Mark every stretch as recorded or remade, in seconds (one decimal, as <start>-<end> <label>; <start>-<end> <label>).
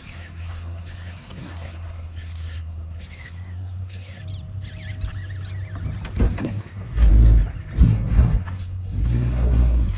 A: 0.0-4.2 remade; 4.2-6.2 recorded; 6.2-7.1 remade; 7.1-7.8 recorded; 7.8-10.0 remade